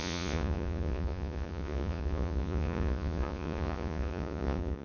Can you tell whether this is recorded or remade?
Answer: remade